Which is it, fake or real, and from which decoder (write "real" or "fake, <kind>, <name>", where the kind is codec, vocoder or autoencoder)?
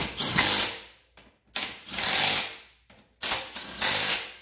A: real